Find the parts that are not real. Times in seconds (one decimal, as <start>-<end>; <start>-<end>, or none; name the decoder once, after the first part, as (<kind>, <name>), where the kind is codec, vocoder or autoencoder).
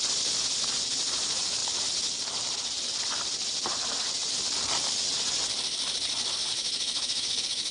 6.5-7.7 (autoencoder, DAC-VAE)